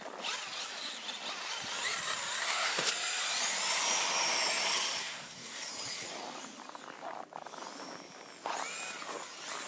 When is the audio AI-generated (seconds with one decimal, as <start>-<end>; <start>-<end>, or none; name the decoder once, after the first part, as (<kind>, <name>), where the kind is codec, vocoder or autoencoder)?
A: 2.4-2.9 (codec, SNAC); 5.0-5.7